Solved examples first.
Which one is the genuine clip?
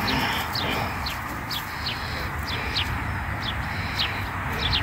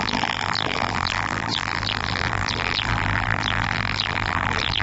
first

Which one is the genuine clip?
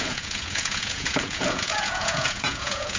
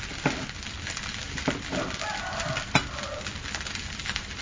second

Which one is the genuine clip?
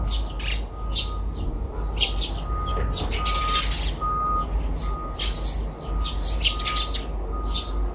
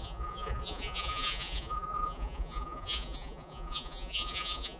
first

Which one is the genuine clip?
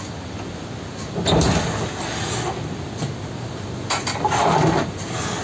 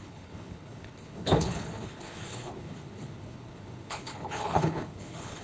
first